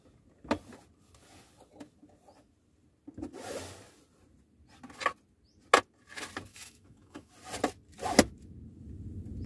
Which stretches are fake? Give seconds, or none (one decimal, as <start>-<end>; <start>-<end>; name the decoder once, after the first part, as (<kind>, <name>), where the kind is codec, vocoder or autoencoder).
6.5-7.3 (autoencoder, DAC-VAE)